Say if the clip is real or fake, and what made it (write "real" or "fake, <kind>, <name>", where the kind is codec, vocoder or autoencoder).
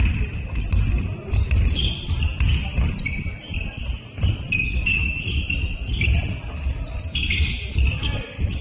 real